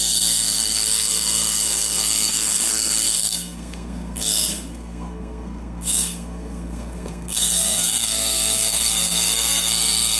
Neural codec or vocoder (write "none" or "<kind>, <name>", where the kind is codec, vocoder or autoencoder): codec, SNAC